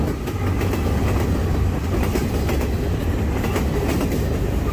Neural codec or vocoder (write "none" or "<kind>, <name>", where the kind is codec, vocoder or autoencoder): none